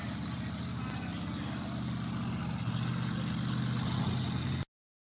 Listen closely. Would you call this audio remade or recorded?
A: recorded